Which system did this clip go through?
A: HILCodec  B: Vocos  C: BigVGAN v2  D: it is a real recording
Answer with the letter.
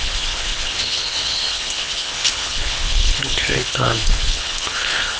A